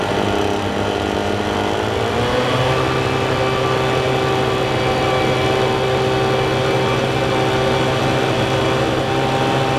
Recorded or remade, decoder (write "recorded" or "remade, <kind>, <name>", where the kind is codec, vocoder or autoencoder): recorded